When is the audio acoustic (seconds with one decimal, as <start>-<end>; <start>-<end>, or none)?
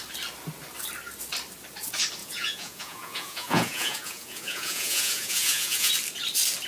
0.0-2.2; 5.9-6.7